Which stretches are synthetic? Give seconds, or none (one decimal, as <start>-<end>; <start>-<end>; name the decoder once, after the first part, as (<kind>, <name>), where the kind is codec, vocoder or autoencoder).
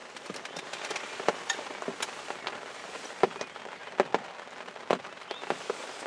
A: none